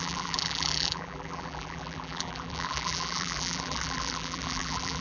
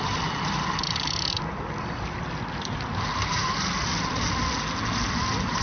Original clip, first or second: second